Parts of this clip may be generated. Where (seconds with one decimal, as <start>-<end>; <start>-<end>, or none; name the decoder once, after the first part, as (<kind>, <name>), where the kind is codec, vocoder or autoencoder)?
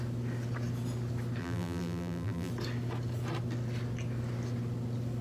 1.4-2.5 (vocoder, BigVGAN v2)